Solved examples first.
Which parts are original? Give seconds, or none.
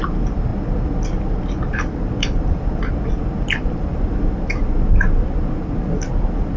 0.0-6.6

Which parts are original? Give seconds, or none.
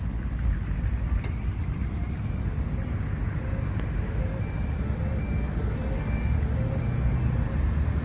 0.0-8.0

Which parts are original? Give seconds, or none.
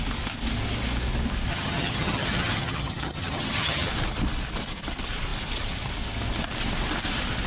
0.0-1.5; 3.9-7.5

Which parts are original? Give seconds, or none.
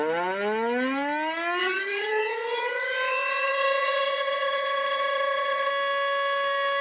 0.0-1.6; 5.7-6.8